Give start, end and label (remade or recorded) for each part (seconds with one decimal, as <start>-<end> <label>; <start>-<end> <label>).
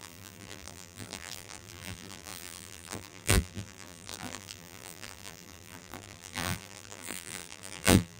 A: 0.0-8.2 remade